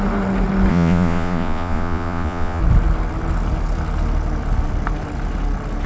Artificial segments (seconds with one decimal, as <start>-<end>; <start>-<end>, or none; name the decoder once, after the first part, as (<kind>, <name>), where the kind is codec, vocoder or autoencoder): 0.7-2.6 (vocoder, Vocos)